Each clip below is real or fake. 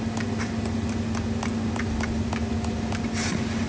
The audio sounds real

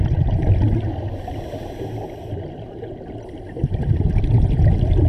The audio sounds real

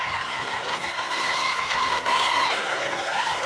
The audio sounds fake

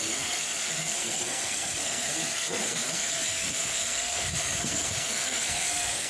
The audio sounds fake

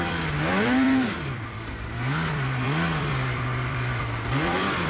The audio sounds fake